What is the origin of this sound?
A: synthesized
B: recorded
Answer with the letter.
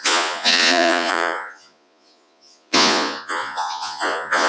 A